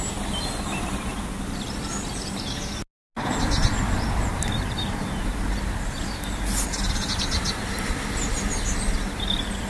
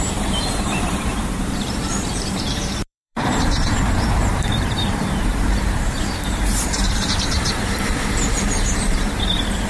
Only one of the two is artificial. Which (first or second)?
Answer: second